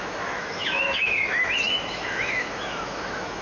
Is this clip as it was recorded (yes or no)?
no